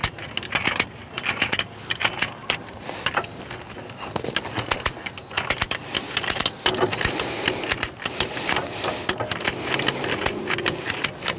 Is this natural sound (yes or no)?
yes